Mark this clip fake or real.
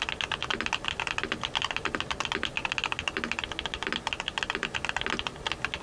real